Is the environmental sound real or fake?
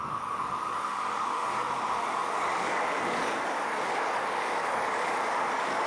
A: fake